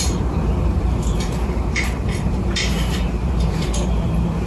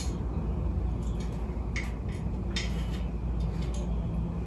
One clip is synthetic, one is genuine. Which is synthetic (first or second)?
first